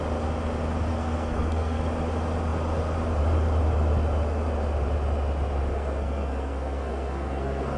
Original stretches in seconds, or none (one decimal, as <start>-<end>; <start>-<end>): 0.0-0.9; 1.8-5.7